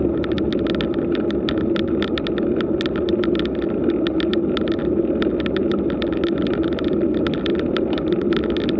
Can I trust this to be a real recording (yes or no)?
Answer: yes